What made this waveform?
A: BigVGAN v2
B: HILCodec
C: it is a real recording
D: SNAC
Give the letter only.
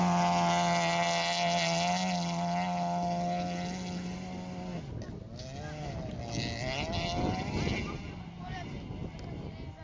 C